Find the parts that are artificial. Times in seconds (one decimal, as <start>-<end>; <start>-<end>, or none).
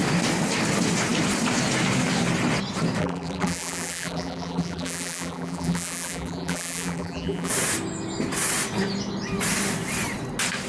3.0-7.5